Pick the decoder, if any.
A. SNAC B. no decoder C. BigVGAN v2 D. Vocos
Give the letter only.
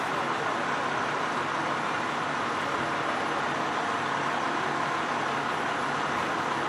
B